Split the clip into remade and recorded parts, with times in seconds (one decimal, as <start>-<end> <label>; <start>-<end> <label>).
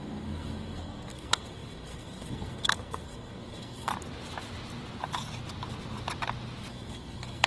0.0-3.9 remade; 3.9-6.7 recorded; 6.7-7.5 remade